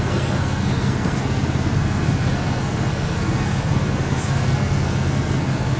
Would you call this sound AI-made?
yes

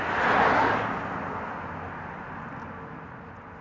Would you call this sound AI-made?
no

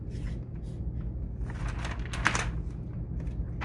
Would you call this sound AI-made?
no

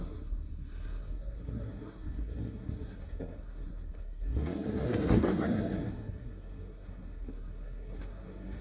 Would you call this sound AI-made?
yes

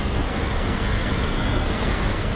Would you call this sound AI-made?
yes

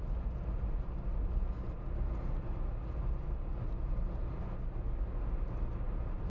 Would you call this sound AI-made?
no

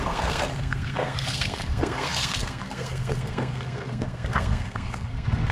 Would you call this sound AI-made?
yes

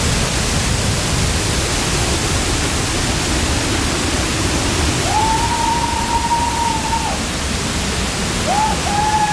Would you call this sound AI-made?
no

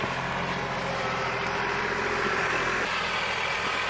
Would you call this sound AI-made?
no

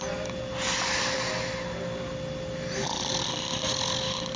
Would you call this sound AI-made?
no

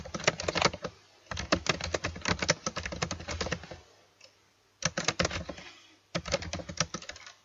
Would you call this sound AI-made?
no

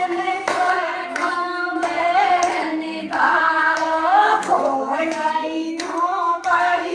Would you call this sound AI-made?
yes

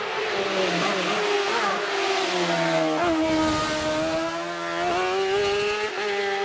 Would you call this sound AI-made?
no